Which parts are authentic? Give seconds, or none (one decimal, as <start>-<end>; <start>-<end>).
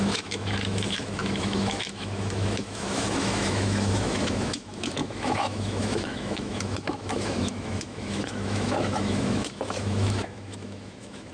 none